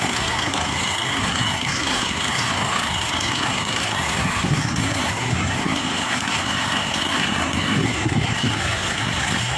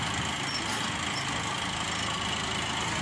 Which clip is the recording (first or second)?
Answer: second